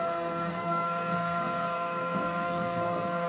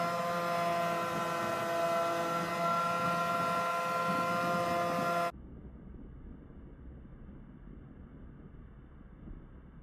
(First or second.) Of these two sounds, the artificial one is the first